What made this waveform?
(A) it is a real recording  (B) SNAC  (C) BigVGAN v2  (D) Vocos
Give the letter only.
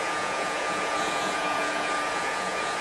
D